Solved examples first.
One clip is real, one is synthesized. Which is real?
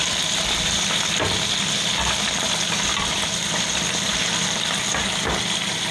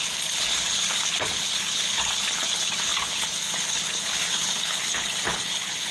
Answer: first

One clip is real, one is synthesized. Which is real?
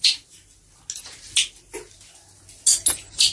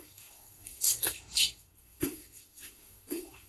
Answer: first